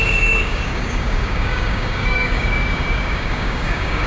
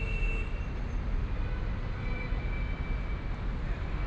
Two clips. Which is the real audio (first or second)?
second